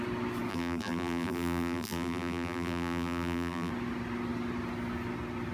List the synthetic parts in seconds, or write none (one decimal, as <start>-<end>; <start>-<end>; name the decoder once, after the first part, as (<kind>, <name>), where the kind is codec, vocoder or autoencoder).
0.5-3.7 (vocoder, BigVGAN v2)

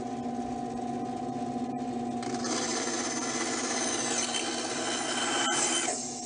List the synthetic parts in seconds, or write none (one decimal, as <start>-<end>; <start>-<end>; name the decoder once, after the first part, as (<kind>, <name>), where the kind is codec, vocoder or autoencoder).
none

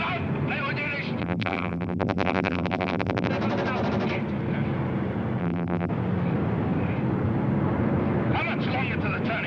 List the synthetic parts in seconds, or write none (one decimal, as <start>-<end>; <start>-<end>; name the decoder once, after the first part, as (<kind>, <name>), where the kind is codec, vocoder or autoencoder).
1.2-3.3 (vocoder, BigVGAN v2); 5.4-5.9

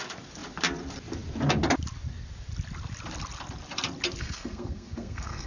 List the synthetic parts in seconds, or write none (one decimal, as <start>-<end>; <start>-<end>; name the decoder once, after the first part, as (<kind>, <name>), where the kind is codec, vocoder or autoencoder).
4.2-5.5 (codec, SNAC)

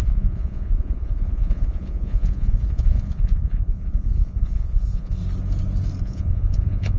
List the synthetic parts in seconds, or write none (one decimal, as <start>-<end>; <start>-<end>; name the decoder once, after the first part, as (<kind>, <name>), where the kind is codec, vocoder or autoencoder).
0.0-5.2 (vocoder, Vocos); 6.0-7.0

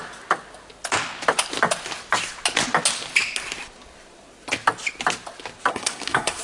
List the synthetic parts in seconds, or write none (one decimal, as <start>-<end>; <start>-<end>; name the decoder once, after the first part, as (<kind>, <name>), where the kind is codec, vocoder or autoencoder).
5.7-6.4 (codec, SNAC)

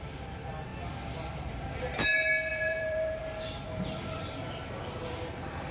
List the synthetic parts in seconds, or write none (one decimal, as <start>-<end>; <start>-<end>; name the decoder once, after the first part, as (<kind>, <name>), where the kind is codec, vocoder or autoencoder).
2.5-4.3 (vocoder, BigVGAN v2)

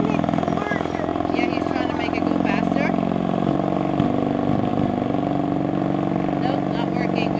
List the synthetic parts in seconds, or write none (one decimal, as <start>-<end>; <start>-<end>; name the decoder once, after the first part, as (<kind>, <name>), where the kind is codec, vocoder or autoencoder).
none